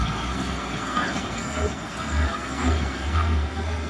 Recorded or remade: remade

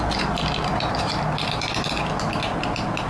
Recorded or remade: recorded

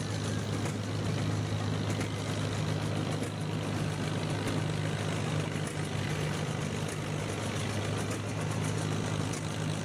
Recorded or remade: recorded